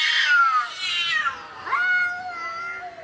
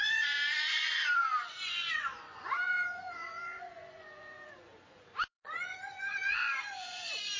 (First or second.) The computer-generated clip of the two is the second